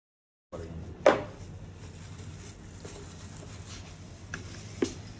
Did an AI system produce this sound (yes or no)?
no